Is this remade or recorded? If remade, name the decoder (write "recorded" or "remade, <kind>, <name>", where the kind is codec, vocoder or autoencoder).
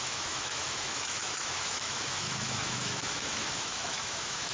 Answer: remade, autoencoder, DAC-VAE